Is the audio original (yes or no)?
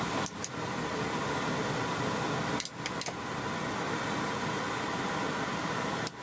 yes